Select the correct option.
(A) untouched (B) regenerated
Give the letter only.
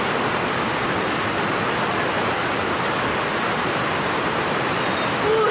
A